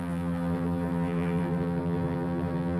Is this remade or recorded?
remade